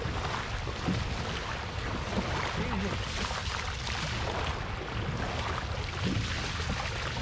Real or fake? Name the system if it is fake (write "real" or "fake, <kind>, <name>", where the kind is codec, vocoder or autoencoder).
real